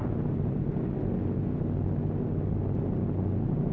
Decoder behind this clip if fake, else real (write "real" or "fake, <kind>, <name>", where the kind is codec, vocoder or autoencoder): real